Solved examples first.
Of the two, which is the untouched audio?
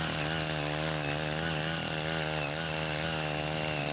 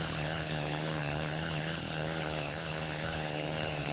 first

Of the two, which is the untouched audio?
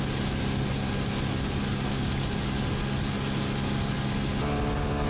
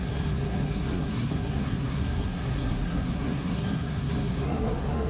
first